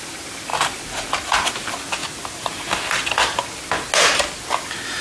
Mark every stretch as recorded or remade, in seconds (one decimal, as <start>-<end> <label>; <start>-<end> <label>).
0.0-5.0 recorded